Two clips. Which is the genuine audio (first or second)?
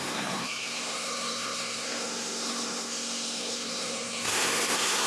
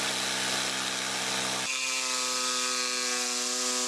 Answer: second